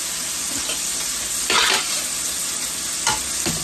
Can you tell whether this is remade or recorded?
recorded